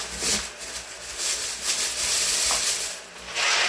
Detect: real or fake real